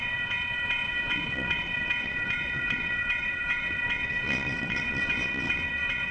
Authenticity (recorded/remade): remade